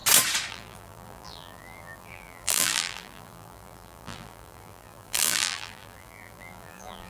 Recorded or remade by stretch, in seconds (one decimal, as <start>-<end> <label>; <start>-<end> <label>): 0.0-0.5 recorded; 0.5-7.1 remade